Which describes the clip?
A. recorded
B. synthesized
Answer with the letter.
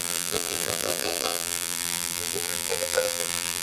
B